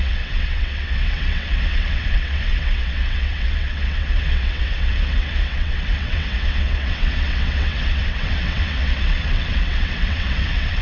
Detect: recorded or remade remade